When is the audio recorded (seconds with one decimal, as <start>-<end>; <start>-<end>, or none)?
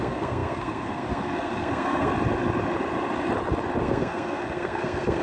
2.1-3.8